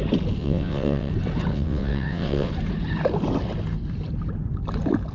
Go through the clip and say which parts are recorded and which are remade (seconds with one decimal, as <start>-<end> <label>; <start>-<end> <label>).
0.0-0.4 recorded; 0.4-1.1 remade; 1.1-1.5 recorded; 1.5-2.5 remade; 2.5-5.1 recorded